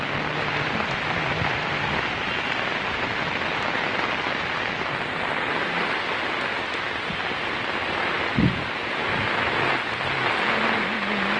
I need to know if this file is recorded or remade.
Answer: recorded